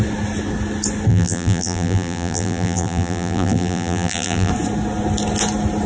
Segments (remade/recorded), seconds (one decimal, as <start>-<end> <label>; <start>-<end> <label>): 0.0-1.1 recorded; 1.1-4.5 remade; 4.5-5.9 recorded